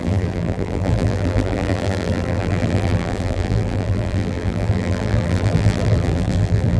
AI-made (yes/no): yes